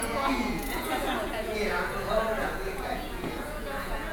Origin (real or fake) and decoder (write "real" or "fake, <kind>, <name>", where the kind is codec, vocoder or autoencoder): fake, vocoder, Vocos